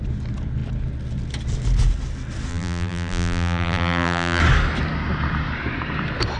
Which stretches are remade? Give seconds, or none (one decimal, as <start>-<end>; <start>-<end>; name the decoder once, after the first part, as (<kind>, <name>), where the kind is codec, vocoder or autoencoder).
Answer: 2.5-4.4 (vocoder, BigVGAN v2)